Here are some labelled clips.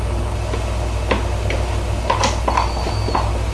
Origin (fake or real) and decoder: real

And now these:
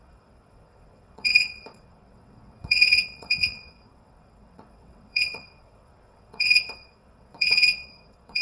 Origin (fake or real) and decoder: fake, vocoder, WaveNeXt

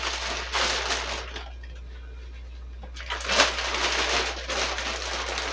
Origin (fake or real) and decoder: real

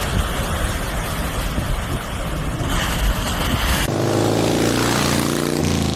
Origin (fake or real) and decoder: real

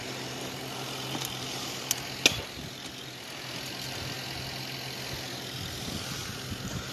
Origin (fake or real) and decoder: real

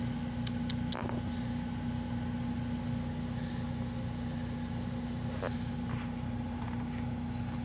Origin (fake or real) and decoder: real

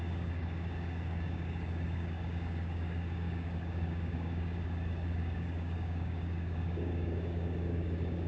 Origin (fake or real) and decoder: fake, codec, DAC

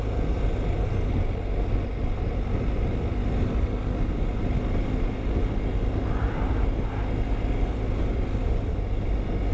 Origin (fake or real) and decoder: real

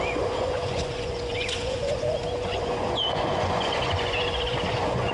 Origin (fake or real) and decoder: fake, vocoder, Vocos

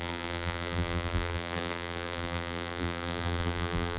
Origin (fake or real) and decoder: fake, vocoder, BigVGAN v2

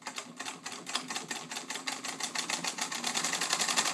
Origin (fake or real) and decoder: real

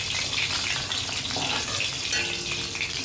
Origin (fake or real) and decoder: real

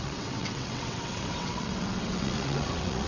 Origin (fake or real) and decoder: fake, vocoder, WaveNeXt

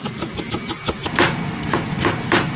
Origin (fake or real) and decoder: real